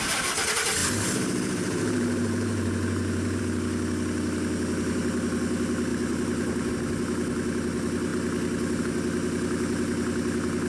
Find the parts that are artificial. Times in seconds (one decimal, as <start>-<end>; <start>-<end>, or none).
0.8-3.4; 5.9-6.7

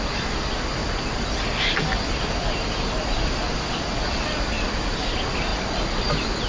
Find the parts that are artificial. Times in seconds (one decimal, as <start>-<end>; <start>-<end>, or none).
none

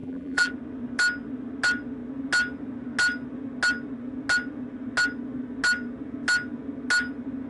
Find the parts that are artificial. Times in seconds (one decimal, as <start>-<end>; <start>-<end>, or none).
0.0-0.5

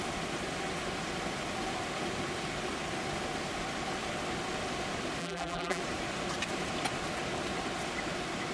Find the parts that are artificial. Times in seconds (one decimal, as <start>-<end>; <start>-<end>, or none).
5.2-5.8

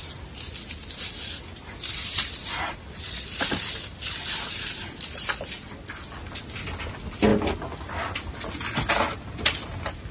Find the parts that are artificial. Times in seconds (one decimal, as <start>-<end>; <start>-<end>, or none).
1.6-5.4

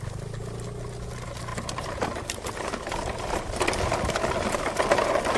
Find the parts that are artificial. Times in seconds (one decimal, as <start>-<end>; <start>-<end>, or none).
1.5-4.7